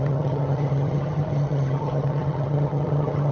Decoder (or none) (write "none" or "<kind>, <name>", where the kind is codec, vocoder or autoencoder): vocoder, HiFi-GAN